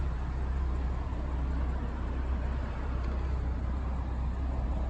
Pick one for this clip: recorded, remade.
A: remade